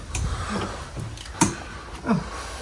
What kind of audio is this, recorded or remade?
recorded